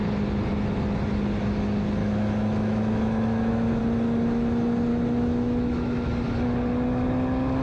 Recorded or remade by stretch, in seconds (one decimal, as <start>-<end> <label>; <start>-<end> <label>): 0.0-2.0 recorded; 2.0-3.8 remade; 3.8-4.9 recorded; 4.9-6.1 remade; 6.1-7.6 recorded